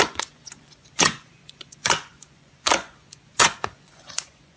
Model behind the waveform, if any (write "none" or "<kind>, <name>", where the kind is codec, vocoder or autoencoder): vocoder, Vocos